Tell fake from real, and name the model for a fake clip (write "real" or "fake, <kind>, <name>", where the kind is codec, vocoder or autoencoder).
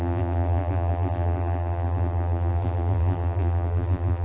fake, vocoder, BigVGAN v2